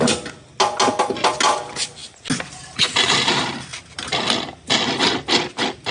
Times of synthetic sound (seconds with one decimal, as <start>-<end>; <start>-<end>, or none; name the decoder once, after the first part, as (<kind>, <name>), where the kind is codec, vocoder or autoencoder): none